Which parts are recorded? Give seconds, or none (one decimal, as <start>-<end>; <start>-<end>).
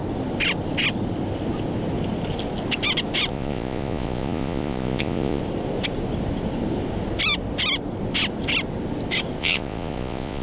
0.0-3.3; 5.4-9.4